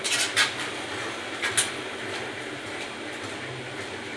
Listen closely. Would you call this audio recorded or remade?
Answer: recorded